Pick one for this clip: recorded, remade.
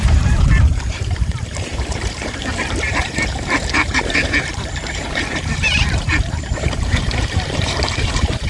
remade